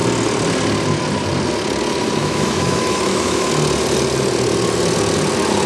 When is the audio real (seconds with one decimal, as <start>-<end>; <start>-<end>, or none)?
0.0-2.2; 3.5-5.7